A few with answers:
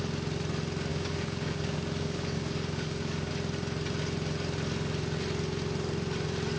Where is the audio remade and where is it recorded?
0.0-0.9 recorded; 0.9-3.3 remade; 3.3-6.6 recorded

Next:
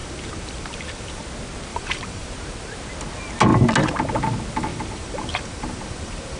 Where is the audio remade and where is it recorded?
0.0-1.2 remade; 1.2-1.7 recorded; 1.7-2.3 remade; 2.3-4.7 recorded; 4.7-6.4 remade

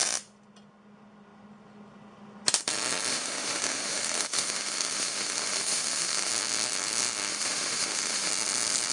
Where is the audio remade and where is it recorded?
0.0-3.1 recorded; 3.1-6.3 remade; 6.3-7.3 recorded; 7.3-8.3 remade; 8.3-8.9 recorded

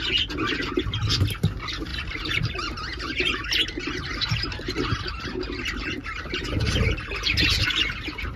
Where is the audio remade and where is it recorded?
0.0-1.9 recorded; 1.9-5.1 remade; 5.1-8.4 recorded

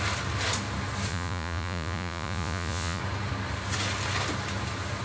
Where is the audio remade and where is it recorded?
0.0-1.1 recorded; 1.1-3.0 remade; 3.0-5.0 recorded